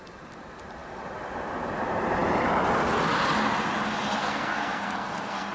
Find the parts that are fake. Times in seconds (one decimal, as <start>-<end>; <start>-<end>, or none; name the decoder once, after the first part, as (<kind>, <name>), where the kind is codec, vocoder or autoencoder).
4.2-5.5 (codec, SNAC)